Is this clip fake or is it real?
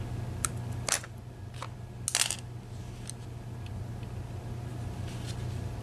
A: real